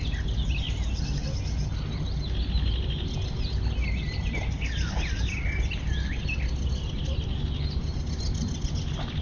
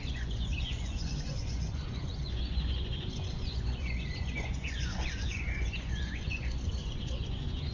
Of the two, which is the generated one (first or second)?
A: second